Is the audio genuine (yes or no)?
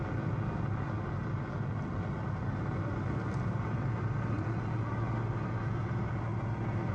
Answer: yes